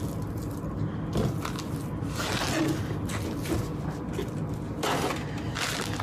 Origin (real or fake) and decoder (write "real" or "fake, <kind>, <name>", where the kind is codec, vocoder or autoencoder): real